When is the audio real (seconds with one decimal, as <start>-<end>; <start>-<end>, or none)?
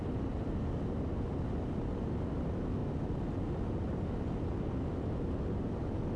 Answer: 0.0-6.2